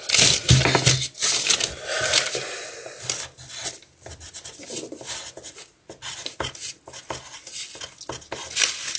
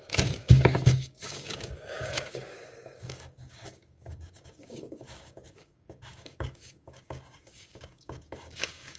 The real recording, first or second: first